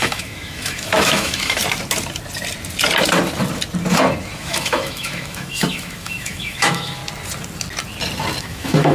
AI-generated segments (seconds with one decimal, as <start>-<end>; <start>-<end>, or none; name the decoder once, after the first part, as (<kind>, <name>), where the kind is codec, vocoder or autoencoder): 0.0-1.6 (autoencoder, DAC-VAE); 4.4-7.0; 8.4-8.9